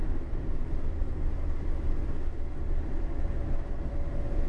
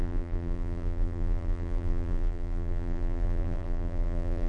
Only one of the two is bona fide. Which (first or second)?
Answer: first